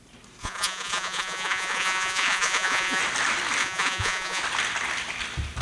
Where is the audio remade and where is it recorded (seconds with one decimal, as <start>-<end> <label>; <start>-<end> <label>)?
0.0-0.4 recorded; 0.4-3.0 remade; 3.0-3.6 recorded; 3.6-4.4 remade; 4.4-5.6 recorded